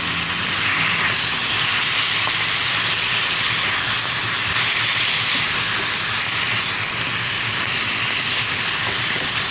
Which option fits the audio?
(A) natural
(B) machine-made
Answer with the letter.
A